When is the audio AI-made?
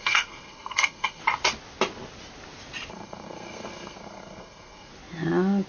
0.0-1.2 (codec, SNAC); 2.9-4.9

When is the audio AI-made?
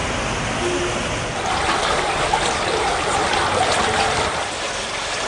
none